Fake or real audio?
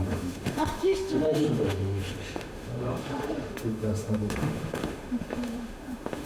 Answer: fake